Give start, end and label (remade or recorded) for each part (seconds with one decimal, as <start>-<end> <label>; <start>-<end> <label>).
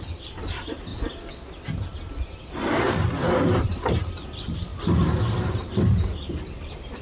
0.0-0.9 remade; 0.9-2.4 recorded; 2.4-7.0 remade